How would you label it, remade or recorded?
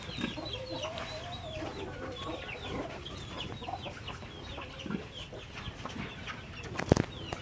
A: recorded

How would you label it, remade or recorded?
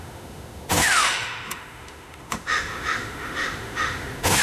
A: remade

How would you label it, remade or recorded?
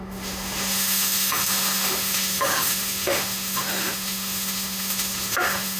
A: remade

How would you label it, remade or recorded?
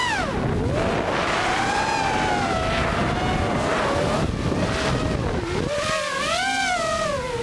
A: recorded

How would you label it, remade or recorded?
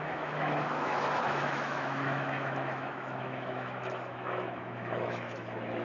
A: remade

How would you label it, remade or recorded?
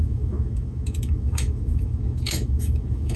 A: remade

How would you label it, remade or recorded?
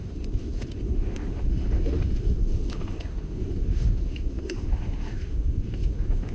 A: remade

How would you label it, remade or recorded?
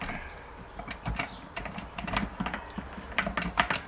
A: recorded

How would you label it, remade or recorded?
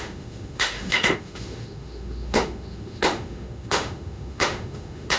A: remade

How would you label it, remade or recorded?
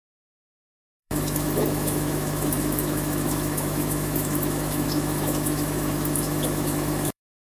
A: remade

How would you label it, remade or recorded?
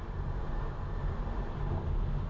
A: recorded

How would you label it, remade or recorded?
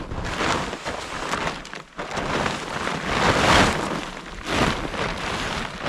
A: recorded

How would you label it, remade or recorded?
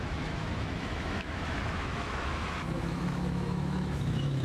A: remade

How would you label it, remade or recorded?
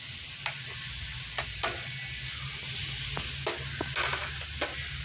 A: recorded